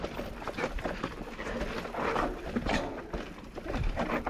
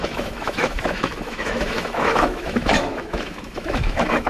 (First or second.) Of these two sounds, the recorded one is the first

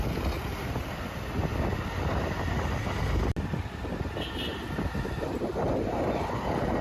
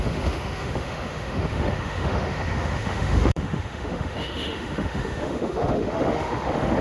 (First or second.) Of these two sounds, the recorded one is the first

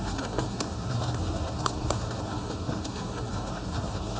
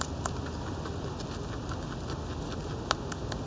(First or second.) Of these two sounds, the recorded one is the second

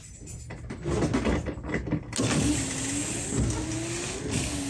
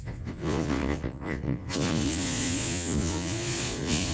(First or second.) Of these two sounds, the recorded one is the first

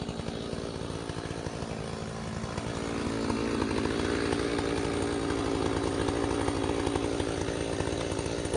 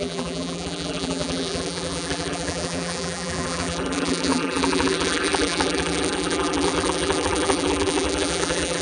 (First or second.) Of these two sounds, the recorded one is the first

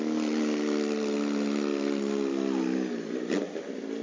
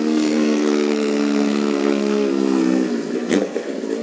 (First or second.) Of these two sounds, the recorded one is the first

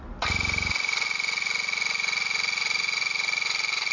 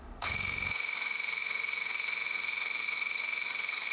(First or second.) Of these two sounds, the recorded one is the first